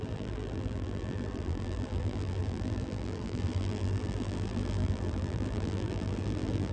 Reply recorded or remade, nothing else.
remade